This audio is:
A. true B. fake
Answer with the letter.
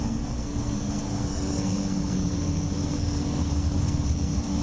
B